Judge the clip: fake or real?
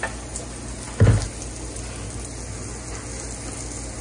real